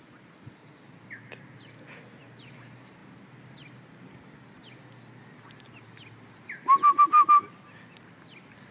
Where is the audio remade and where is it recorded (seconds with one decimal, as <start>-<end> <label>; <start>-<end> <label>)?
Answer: 0.0-8.7 recorded